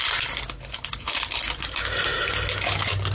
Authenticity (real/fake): real